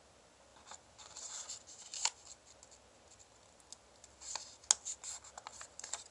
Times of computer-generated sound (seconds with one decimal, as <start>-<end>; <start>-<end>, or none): none